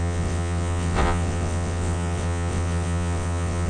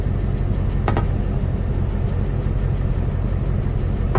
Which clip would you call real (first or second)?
second